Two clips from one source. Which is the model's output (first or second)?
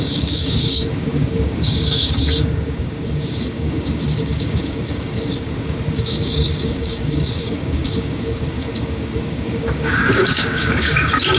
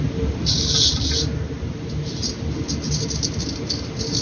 first